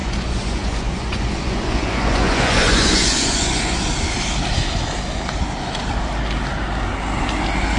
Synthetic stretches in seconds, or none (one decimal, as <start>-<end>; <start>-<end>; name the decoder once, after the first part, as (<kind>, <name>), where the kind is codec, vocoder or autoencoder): 0.0-3.9 (vocoder, Vocos)